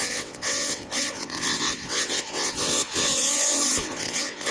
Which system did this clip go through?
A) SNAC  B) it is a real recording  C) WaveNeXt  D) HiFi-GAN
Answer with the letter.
C